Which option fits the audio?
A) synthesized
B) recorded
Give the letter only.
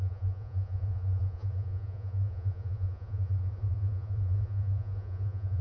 A